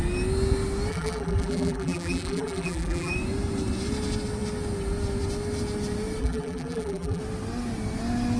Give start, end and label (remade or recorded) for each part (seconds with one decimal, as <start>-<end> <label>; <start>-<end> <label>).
0.0-0.9 recorded; 0.9-3.1 remade; 3.1-6.2 recorded; 6.2-7.2 remade; 7.2-8.4 recorded